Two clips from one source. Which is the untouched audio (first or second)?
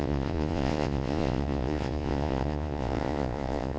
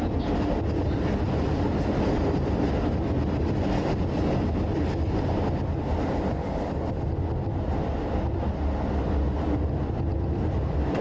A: second